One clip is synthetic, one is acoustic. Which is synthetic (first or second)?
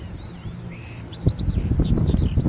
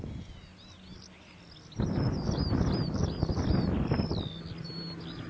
first